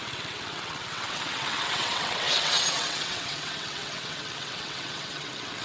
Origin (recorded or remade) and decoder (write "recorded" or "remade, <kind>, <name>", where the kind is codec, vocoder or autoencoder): remade, vocoder, WaveNeXt